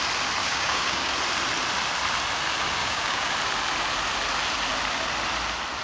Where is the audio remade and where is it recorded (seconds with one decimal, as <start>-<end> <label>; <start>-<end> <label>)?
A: 0.0-0.4 recorded; 0.4-1.1 remade; 1.1-2.8 recorded; 2.8-3.3 remade; 3.3-5.8 recorded